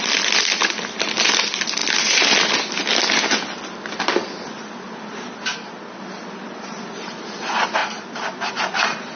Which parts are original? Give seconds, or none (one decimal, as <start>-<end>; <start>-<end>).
0.0-9.2